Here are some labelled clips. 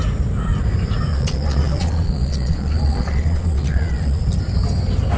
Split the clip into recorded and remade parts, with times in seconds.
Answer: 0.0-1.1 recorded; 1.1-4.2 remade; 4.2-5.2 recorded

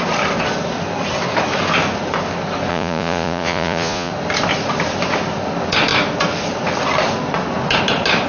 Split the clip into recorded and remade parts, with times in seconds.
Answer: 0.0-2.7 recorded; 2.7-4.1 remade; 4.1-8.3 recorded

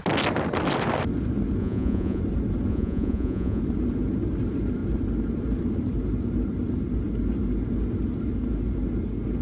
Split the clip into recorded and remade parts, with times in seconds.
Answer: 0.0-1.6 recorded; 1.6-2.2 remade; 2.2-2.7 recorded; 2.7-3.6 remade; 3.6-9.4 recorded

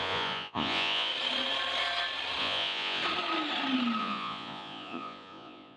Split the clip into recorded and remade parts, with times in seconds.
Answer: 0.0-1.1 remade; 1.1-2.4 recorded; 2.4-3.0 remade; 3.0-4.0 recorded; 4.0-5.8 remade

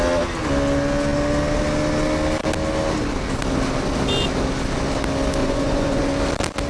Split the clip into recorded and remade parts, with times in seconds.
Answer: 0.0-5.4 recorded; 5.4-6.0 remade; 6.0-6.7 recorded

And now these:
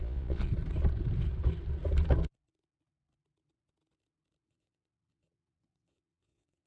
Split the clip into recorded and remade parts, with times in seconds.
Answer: 0.0-0.5 remade; 0.5-4.5 recorded; 4.5-6.7 remade

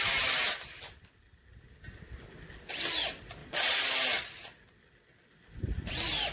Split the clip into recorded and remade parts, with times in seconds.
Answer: 0.0-3.4 recorded; 3.4-3.9 remade; 3.9-6.3 recorded